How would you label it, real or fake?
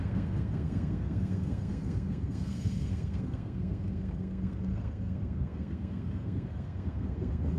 fake